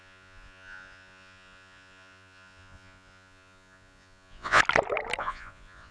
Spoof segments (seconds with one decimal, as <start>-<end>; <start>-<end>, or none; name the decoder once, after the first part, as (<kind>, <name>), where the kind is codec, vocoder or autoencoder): 0.0-4.6 (vocoder, Vocos); 5.2-5.9